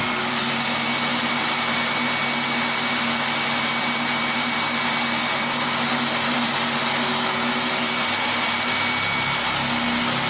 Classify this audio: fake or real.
real